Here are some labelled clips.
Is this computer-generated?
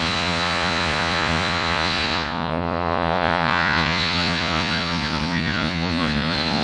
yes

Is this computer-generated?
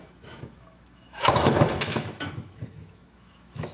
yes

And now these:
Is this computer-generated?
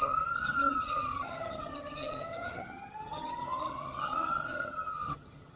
yes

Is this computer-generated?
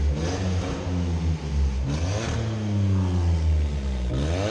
no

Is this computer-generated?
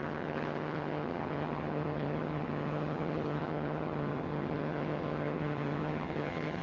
yes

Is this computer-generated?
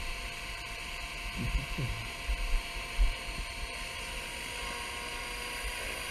yes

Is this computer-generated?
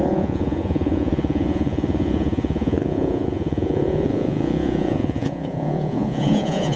yes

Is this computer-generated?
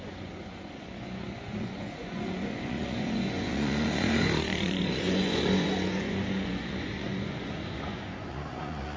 yes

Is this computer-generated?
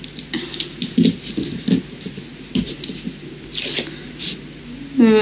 no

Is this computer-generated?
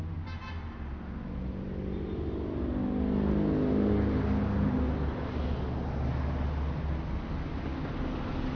no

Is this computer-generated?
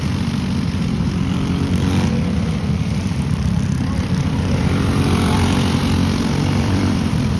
yes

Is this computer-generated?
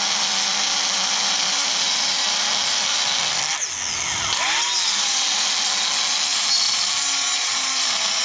no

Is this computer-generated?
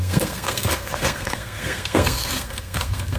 yes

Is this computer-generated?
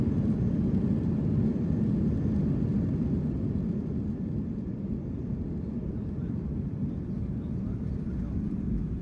yes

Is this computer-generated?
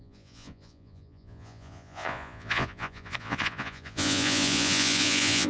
yes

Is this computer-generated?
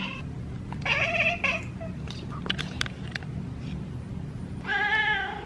yes